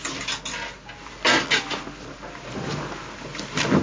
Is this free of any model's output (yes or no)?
yes